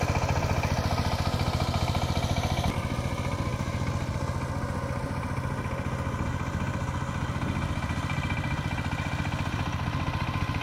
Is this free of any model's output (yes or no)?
yes